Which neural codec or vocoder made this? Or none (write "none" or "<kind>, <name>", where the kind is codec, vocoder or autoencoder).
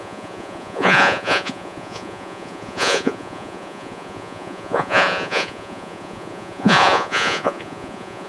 vocoder, Vocos